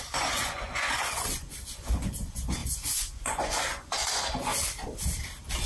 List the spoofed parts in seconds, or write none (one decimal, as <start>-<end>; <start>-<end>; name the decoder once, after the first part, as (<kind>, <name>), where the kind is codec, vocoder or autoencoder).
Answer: 0.0-4.5 (vocoder, Vocos)